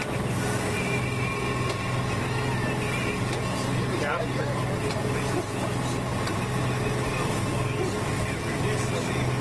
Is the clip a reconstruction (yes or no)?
no